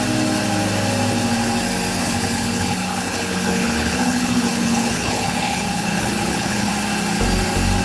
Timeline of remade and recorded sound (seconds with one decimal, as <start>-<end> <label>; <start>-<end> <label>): 0.0-2.0 recorded; 2.0-6.7 remade; 6.7-7.8 recorded